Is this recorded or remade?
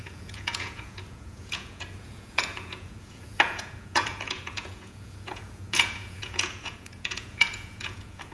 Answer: remade